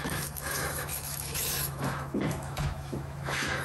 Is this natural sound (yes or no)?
no